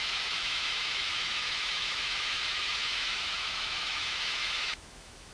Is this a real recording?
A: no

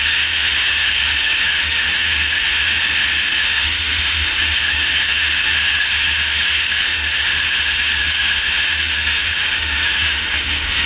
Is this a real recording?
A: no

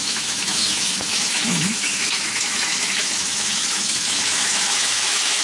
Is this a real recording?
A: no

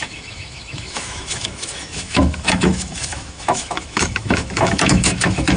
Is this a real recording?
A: no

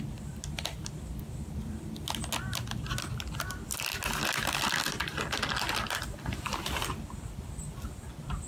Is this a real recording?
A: yes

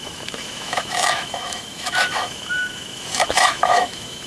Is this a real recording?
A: no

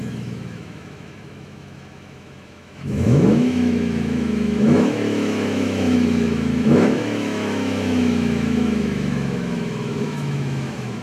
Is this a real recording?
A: no